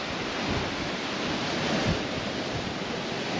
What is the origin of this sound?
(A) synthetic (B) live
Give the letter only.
B